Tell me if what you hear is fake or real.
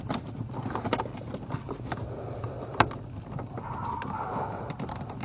fake